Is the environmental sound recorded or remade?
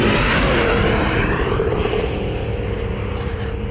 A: remade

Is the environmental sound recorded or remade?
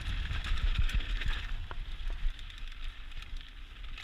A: recorded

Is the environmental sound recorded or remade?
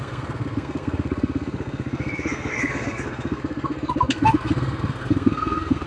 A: remade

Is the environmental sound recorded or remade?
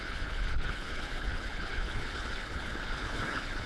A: remade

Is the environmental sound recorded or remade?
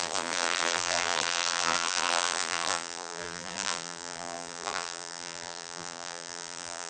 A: remade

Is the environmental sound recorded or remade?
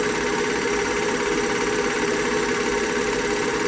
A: remade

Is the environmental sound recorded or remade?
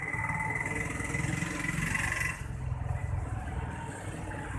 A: recorded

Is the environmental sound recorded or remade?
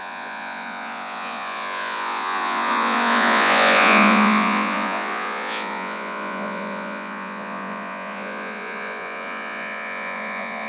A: remade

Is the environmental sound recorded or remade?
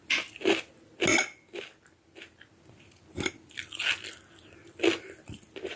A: recorded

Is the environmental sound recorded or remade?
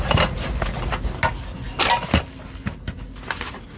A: recorded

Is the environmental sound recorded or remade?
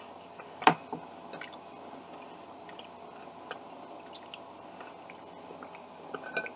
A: recorded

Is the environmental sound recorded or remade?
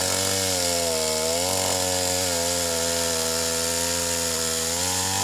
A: recorded